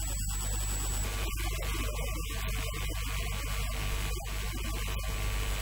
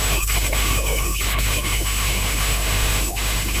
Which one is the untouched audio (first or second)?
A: first